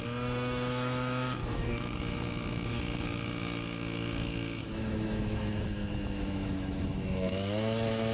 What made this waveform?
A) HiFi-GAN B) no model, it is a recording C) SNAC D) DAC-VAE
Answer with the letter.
D